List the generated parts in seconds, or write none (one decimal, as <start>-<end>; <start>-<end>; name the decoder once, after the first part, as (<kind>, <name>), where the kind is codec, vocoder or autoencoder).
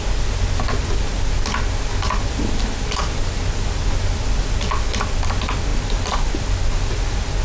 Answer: 5.7-6.9 (vocoder, BigVGAN v2)